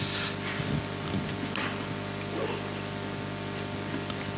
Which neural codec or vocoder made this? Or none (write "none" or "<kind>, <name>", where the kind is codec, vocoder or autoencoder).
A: none